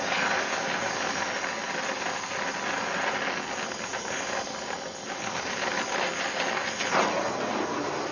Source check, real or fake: real